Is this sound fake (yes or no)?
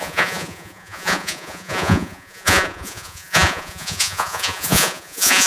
yes